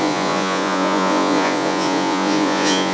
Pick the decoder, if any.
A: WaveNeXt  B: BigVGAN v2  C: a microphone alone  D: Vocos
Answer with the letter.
D